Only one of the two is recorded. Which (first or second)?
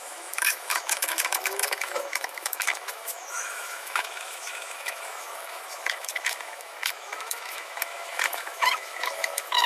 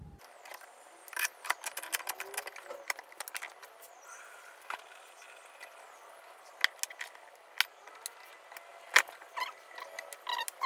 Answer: second